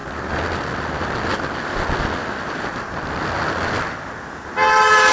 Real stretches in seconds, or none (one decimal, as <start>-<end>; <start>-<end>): 0.0-5.1